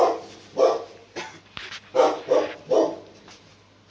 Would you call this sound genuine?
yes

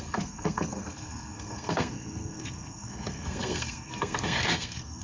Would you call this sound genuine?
no